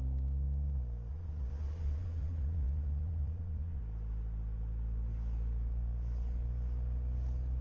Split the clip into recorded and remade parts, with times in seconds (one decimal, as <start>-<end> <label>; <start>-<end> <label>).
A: 0.0-1.1 recorded; 1.1-3.8 remade; 3.8-7.6 recorded